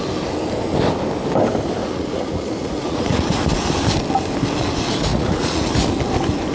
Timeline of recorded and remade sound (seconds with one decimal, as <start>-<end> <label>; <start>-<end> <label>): 0.0-1.8 recorded; 1.8-3.4 remade; 3.4-5.1 recorded; 5.1-5.7 remade; 5.7-6.5 recorded